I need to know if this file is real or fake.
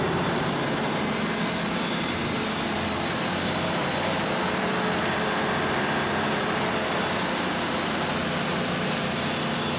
fake